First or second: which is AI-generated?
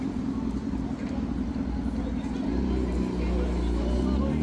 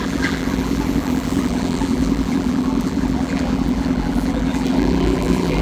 second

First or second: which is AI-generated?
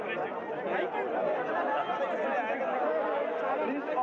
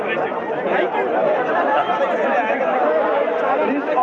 second